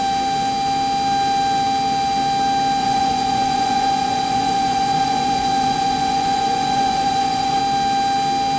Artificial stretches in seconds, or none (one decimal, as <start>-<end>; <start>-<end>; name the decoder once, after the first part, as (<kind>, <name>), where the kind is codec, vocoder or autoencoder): 2.8-7.6 (vocoder, Vocos)